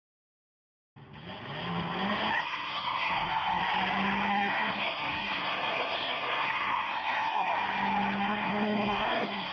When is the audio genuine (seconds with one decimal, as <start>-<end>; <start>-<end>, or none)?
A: 0.7-2.4; 3.6-4.3; 7.5-8.2